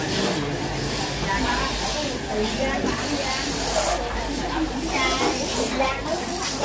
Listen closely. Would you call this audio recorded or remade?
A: recorded